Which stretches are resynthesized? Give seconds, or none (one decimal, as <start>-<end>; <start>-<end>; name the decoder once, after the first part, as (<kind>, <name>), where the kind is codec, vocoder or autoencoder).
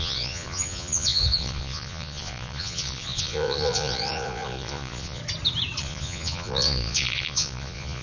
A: 0.0-5.2 (vocoder, Vocos); 5.8-8.0